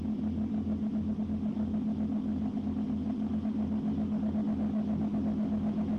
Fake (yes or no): no